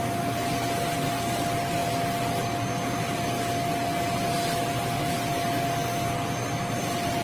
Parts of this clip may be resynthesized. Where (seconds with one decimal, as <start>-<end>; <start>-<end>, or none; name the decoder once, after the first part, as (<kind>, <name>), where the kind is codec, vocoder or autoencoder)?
none

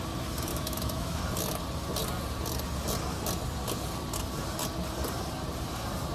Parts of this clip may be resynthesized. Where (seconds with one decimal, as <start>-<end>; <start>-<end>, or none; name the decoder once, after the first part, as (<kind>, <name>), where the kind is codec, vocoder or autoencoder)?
0.5-1.2 (autoencoder, DAC-VAE)

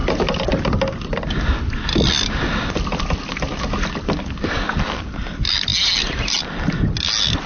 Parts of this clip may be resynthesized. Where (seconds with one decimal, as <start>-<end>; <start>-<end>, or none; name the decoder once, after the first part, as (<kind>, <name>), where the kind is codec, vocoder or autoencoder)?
none

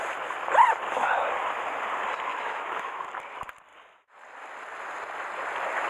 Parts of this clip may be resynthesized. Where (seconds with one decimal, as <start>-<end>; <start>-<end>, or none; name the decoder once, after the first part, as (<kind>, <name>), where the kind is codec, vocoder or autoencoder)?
2.3-3.0 (autoencoder, DAC-VAE)

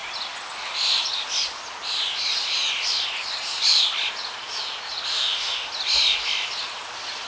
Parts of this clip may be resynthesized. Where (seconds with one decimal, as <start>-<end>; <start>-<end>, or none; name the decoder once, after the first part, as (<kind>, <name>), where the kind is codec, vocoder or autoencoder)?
5.1-5.7 (autoencoder, DAC-VAE)